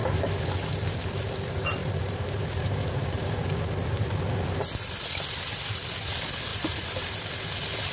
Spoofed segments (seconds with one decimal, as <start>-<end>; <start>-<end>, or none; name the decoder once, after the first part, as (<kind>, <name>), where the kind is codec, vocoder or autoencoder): 1.8-3.6 (vocoder, BigVGAN v2); 6.5-7.2